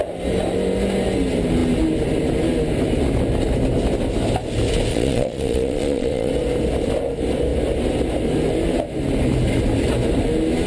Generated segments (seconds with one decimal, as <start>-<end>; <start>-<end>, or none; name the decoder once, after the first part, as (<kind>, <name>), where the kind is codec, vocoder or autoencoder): 4.9-6.3 (vocoder, Vocos)